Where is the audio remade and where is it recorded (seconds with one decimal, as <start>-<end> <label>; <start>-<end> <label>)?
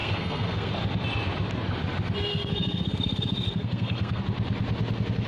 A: 0.0-0.7 remade; 0.7-2.3 recorded; 2.3-4.2 remade; 4.2-5.3 recorded